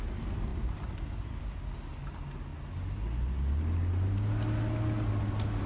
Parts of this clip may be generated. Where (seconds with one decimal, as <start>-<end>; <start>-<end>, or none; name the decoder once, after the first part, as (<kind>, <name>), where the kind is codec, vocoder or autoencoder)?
none